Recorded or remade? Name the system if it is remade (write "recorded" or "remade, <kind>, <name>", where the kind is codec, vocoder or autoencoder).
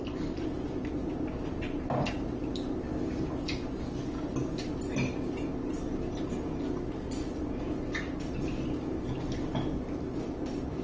recorded